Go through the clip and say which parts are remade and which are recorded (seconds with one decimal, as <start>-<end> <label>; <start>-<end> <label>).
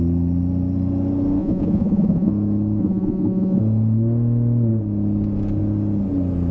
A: 0.0-1.4 recorded; 1.4-2.3 remade; 2.3-2.8 recorded; 2.8-3.6 remade; 3.6-6.5 recorded